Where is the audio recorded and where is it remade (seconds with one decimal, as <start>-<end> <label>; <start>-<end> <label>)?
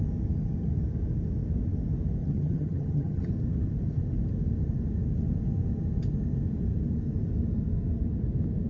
0.0-2.2 recorded; 2.2-3.3 remade; 3.3-8.7 recorded